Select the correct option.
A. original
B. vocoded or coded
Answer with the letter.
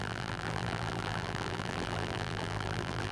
B